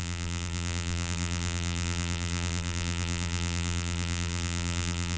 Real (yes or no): no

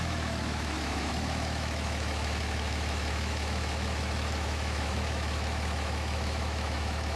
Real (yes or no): no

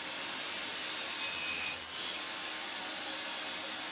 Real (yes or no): yes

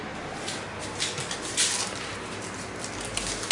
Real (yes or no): yes